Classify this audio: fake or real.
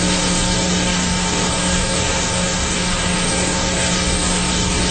fake